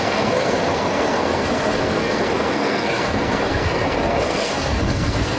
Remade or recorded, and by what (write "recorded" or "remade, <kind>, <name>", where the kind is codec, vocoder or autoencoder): remade, codec, SNAC